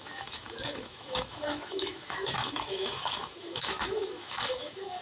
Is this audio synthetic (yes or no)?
yes